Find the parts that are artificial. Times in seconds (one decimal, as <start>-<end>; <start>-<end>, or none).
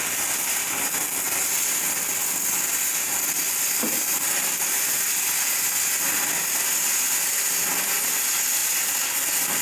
none